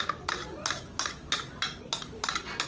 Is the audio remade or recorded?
recorded